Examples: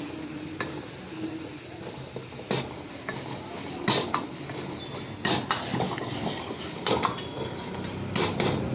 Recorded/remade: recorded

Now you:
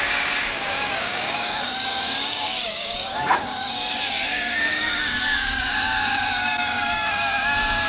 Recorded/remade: remade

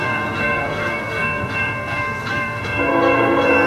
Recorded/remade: remade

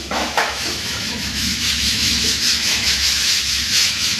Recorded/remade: remade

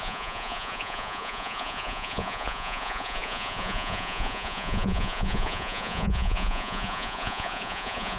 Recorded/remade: remade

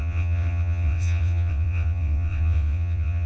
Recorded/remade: remade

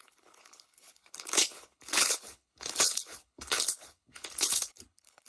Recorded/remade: remade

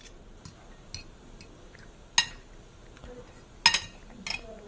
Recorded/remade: recorded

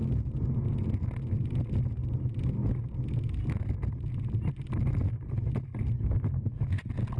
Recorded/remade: recorded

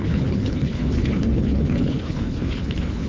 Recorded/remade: remade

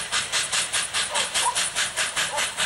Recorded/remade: remade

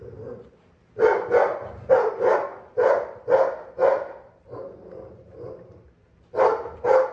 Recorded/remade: recorded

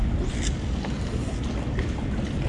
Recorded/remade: recorded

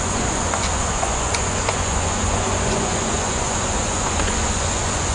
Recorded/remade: remade